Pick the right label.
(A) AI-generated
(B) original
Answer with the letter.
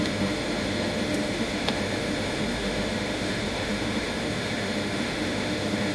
A